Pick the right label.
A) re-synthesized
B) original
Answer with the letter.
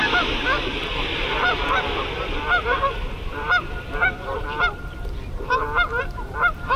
A